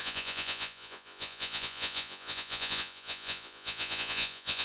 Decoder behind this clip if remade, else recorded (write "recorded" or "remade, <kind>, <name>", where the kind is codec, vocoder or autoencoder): remade, vocoder, Vocos